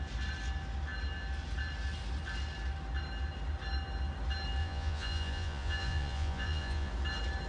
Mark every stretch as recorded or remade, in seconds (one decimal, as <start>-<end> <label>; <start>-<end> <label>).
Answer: 0.0-4.6 recorded; 4.6-6.9 remade; 6.9-7.5 recorded